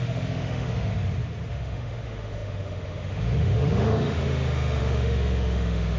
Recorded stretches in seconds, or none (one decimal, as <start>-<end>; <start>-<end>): 0.9-1.5